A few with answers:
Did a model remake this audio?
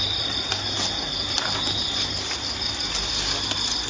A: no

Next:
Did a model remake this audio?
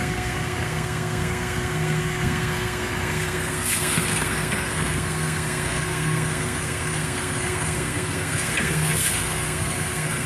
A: yes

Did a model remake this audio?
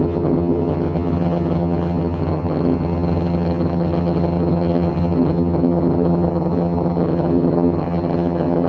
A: yes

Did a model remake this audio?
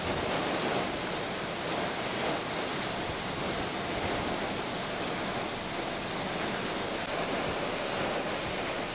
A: no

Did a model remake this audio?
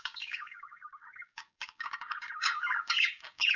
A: yes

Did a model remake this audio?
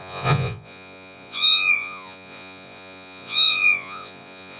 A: yes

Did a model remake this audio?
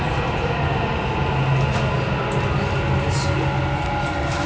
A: no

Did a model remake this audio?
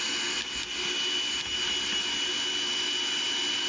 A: no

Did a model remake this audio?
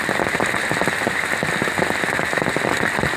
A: no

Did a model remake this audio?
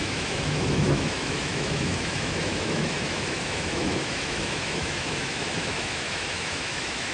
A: yes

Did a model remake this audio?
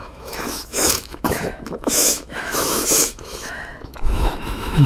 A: yes